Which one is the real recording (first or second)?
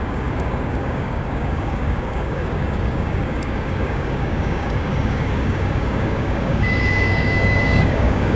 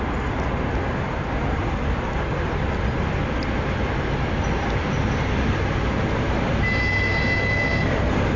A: second